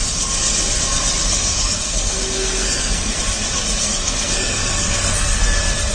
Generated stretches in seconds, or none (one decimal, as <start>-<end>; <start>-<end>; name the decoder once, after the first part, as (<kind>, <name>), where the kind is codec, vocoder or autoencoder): 1.3-3.2 (codec, SNAC); 3.8-5.4